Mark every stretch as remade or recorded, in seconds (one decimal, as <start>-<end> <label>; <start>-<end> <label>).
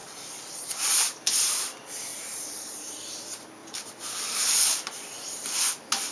0.0-2.1 recorded; 2.1-2.9 remade; 2.9-3.6 recorded; 3.6-5.1 remade; 5.1-6.1 recorded